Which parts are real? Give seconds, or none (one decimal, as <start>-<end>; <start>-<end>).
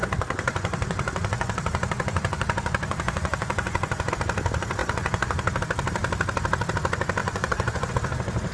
4.1-4.8; 5.6-7.2; 7.9-8.5